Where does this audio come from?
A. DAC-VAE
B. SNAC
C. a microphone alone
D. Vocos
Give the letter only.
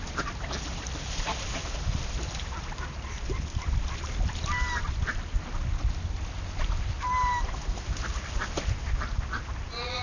C